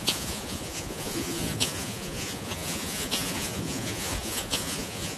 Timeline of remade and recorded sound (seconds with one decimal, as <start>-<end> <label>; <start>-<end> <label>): 0.0-5.2 remade